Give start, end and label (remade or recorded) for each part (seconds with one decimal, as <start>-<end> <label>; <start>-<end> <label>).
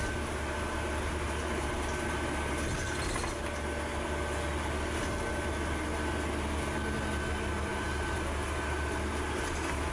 0.0-9.9 recorded